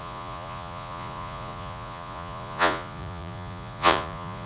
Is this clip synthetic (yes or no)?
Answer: yes